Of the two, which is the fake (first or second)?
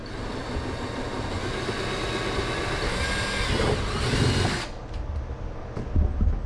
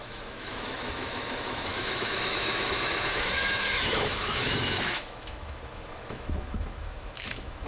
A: second